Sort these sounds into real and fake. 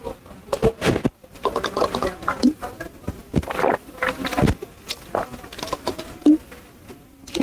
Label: real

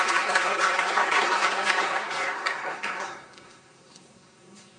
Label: fake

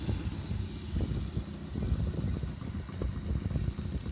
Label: real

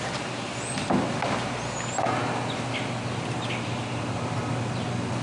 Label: real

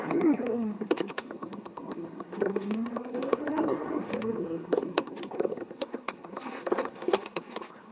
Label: fake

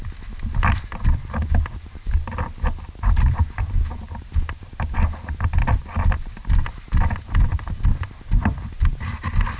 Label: real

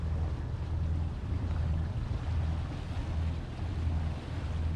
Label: real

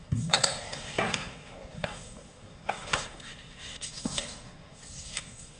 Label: fake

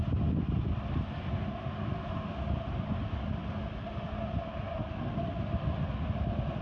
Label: real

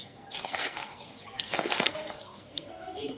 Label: fake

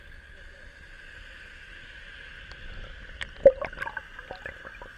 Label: real